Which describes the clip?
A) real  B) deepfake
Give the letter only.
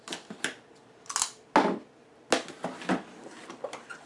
A